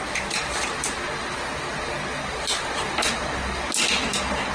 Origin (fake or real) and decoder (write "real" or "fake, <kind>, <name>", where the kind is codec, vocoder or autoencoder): real